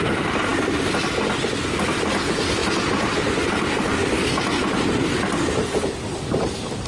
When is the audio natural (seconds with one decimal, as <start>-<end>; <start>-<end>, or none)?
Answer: 0.0-6.9